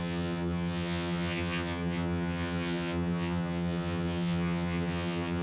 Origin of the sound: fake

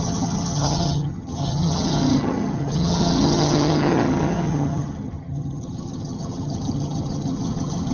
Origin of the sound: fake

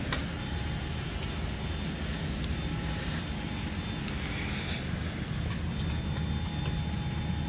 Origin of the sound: real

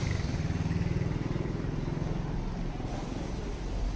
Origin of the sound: real